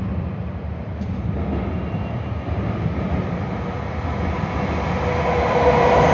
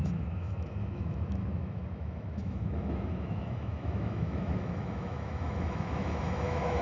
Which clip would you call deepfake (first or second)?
second